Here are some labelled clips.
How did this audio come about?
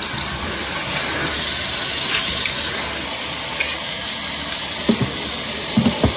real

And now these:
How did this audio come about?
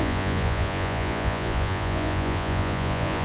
fake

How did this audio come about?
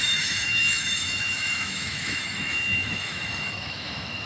fake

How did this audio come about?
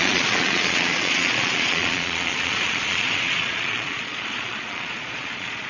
fake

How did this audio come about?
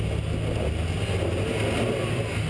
real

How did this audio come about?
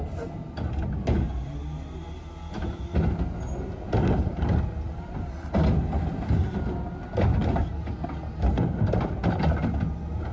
real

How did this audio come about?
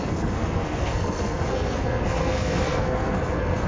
fake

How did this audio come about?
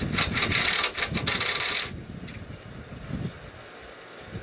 real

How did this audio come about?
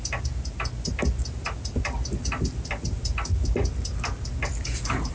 real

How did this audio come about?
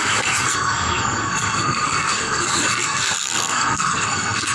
fake